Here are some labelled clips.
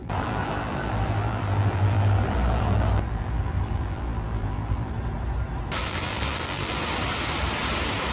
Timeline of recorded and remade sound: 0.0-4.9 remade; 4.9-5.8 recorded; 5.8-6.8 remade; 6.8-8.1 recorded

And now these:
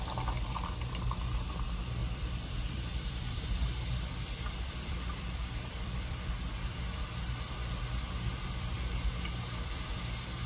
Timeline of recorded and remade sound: 0.0-2.0 recorded; 2.0-6.3 remade; 6.3-10.5 recorded

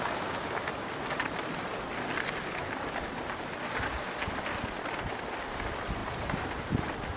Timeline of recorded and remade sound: 0.0-6.0 recorded; 6.0-6.7 remade; 6.7-7.2 recorded

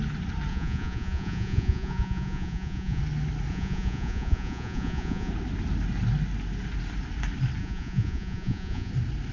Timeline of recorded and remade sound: 0.0-0.5 recorded; 0.5-3.0 remade; 3.0-3.5 recorded; 3.5-5.3 remade; 5.3-7.6 recorded; 7.6-8.9 remade; 8.9-9.3 recorded

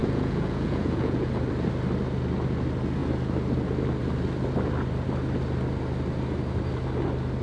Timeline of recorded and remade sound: 0.0-1.3 remade; 1.3-7.4 recorded

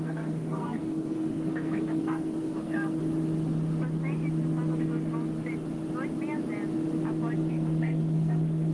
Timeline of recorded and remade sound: 0.0-3.0 remade; 3.0-7.5 recorded; 7.5-8.7 remade